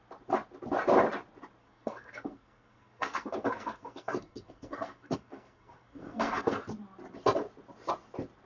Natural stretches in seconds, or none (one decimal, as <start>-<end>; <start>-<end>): 0.0-1.6; 6.6-8.5